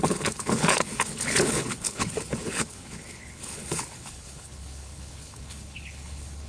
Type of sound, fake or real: fake